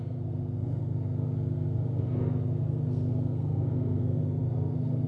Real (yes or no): no